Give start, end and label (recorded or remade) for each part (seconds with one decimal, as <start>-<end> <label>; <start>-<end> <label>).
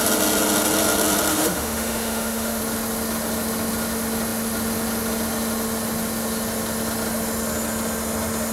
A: 0.0-1.3 recorded; 1.3-2.6 remade; 2.6-8.5 recorded